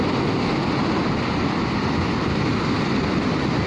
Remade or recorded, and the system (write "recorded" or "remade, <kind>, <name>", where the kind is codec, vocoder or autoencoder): recorded